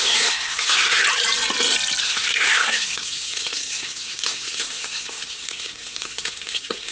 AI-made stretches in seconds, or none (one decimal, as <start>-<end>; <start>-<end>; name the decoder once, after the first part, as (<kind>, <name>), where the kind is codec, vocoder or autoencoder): 0.0-1.0 (codec, SNAC); 2.0-6.9